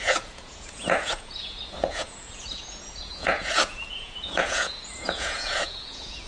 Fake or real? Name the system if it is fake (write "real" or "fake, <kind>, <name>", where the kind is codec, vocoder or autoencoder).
fake, vocoder, Vocos